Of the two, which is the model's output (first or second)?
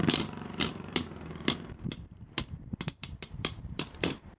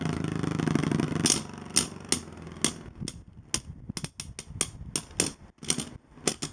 first